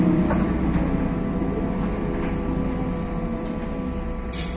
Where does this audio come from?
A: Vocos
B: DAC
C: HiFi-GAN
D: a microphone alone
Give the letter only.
D